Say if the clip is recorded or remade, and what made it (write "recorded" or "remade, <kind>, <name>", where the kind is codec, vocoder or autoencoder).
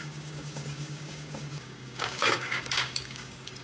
remade, codec, DAC